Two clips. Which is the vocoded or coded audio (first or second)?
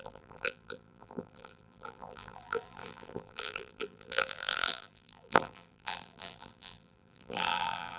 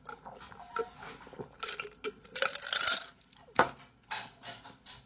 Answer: first